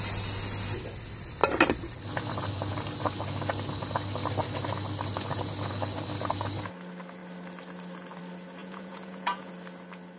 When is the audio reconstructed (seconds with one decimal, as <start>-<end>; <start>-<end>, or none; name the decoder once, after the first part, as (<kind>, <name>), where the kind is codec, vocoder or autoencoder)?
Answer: 8.6-9.5 (vocoder, Vocos)